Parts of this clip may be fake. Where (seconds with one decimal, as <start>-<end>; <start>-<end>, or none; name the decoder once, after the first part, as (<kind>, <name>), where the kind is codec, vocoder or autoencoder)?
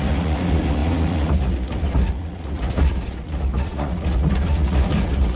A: 0.0-5.4 (vocoder, Vocos)